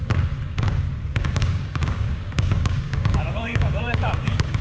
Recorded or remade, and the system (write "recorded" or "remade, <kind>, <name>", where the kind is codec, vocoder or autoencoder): remade, codec, DAC